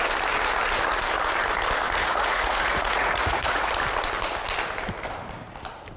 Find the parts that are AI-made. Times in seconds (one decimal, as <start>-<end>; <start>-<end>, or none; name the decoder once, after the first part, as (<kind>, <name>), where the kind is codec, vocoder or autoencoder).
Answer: 2.0-3.7 (vocoder, Vocos)